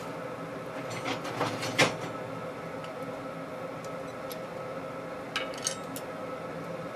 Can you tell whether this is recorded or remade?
recorded